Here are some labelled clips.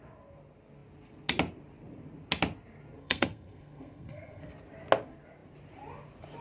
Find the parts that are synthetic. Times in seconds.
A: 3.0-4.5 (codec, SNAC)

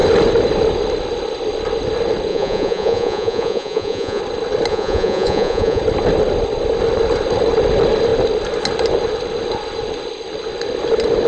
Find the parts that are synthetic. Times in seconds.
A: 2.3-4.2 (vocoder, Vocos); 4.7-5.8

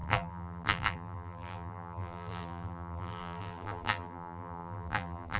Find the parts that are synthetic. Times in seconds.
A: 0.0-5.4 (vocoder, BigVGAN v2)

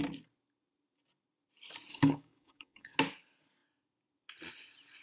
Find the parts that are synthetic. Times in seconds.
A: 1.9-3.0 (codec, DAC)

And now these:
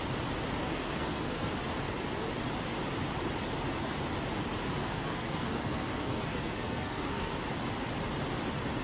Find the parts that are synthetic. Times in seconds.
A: 0.6-1.5 (codec, SNAC); 4.8-7.4